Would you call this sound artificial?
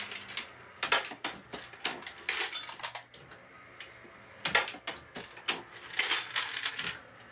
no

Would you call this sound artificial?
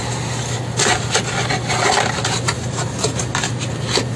no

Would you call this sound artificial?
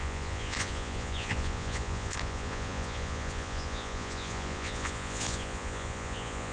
yes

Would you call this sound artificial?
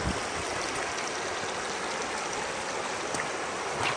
no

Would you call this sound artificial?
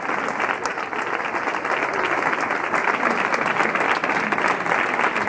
no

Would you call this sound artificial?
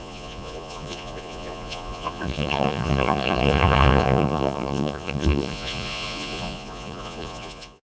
yes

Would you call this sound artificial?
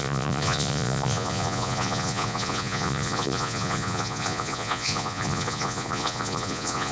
yes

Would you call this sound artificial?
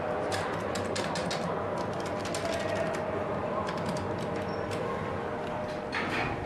no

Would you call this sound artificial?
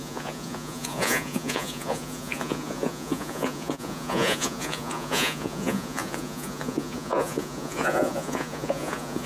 yes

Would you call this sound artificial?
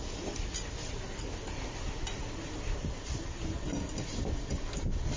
no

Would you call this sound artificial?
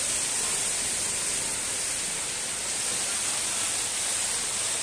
no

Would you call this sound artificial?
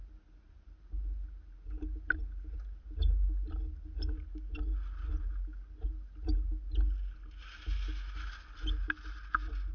no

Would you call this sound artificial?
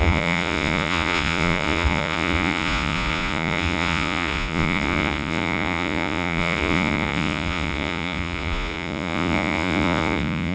yes